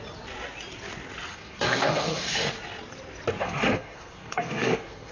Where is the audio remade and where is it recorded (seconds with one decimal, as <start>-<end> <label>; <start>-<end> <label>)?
0.0-1.3 recorded; 1.3-2.5 remade; 2.5-3.4 recorded; 3.4-5.1 remade